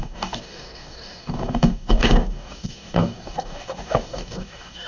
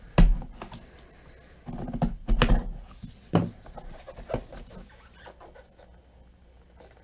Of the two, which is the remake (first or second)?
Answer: first